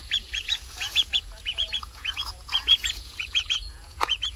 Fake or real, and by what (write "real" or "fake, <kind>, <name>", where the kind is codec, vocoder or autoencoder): fake, vocoder, Vocos